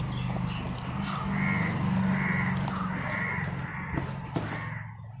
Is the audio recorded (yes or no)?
yes